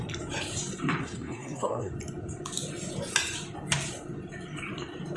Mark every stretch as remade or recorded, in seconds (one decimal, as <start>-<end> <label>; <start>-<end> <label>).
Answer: 0.0-1.0 recorded; 1.0-1.9 remade; 1.9-5.2 recorded